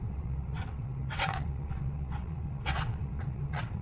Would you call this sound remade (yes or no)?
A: yes